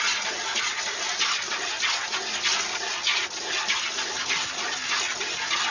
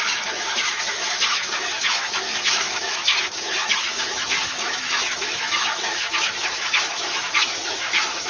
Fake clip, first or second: second